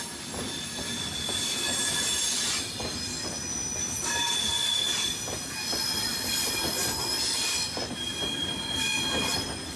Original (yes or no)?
yes